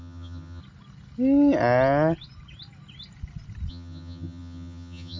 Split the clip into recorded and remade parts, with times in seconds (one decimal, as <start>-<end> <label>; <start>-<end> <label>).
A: 0.0-0.6 remade; 0.6-3.7 recorded; 3.7-5.2 remade